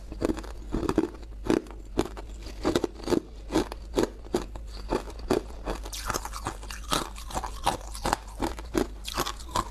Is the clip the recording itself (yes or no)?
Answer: yes